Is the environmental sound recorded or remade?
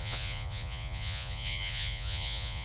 remade